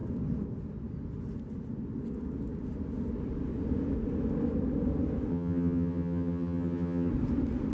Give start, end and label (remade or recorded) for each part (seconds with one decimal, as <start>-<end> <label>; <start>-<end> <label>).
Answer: 0.0-5.3 recorded; 5.3-7.1 remade; 7.1-7.7 recorded